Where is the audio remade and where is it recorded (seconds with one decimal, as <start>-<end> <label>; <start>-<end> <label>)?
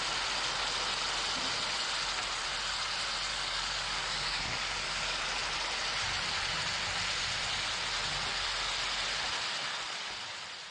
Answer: 0.0-3.3 recorded; 3.3-5.2 remade; 5.2-10.7 recorded